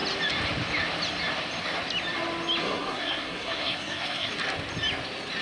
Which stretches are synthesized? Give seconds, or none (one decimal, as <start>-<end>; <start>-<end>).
2.6-4.3